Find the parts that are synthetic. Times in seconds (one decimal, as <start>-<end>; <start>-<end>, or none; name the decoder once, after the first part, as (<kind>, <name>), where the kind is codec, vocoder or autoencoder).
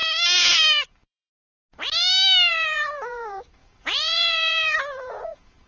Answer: 0.9-1.3 (vocoder, Vocos); 2.5-5.7